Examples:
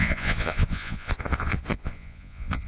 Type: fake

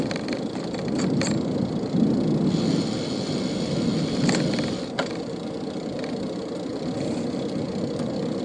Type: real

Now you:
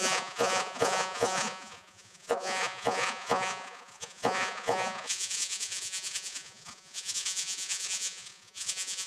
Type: fake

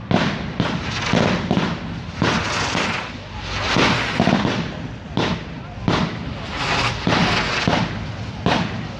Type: real